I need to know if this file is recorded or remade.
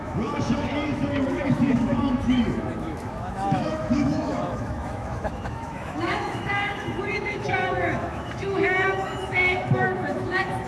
remade